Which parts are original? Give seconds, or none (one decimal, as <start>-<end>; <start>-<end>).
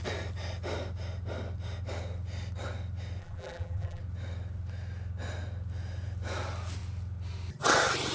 0.0-3.2; 4.0-8.1